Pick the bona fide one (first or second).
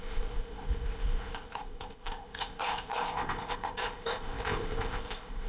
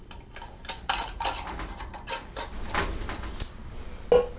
second